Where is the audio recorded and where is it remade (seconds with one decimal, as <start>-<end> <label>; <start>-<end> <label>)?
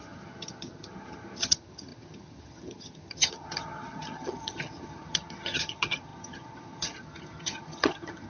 0.0-8.3 remade